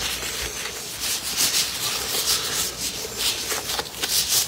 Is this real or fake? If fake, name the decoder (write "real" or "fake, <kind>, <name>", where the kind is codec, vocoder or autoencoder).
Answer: real